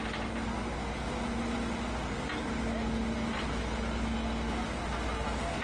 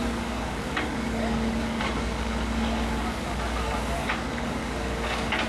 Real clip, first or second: first